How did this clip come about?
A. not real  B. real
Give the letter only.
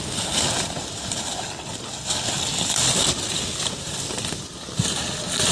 B